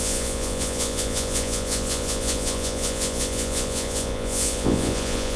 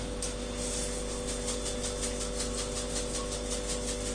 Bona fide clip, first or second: second